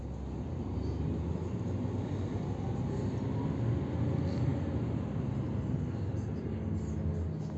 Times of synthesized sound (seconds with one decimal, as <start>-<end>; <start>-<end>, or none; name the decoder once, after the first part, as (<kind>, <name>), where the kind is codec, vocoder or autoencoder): none